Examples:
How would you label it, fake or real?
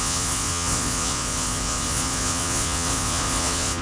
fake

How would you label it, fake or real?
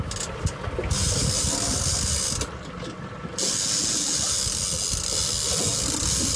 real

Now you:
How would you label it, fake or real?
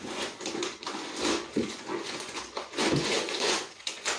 fake